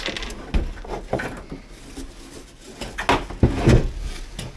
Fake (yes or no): no